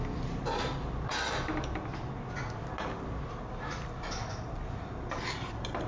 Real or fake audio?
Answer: real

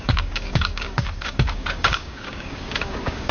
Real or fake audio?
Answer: fake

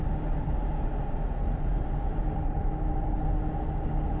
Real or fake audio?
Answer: real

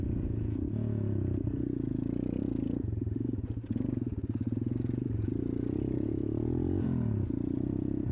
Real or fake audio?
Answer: fake